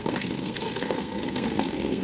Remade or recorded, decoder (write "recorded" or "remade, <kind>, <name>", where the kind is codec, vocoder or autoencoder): remade, codec, SNAC